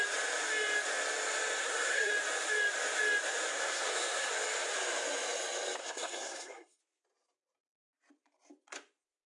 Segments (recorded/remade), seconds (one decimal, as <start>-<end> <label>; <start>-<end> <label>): 0.0-1.6 recorded; 1.6-2.1 remade; 2.1-3.5 recorded; 3.5-4.3 remade; 4.3-5.8 recorded; 5.8-6.8 remade; 6.8-9.3 recorded